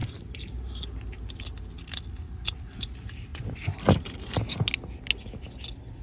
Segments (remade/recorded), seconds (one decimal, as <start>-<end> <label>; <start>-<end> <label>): 0.0-3.3 recorded; 3.3-3.8 remade; 3.8-6.0 recorded